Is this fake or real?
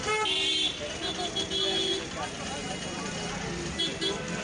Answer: real